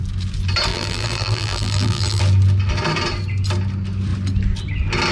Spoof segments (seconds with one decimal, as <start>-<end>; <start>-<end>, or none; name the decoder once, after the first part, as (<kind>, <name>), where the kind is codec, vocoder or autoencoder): 0.7-2.2 (vocoder, BigVGAN v2)

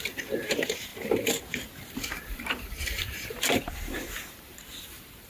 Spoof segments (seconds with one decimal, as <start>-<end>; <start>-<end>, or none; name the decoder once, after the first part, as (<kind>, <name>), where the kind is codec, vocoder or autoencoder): 0.0-5.3 (vocoder, BigVGAN v2)

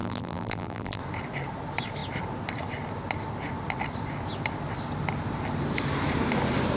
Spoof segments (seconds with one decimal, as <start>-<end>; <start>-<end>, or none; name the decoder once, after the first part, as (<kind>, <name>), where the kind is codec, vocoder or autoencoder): 0.0-1.0 (vocoder, BigVGAN v2)

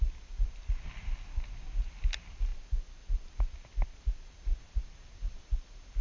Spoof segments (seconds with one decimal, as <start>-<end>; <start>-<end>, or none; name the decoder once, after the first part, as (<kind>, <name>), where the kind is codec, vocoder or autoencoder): none